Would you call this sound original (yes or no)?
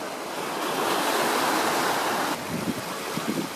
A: yes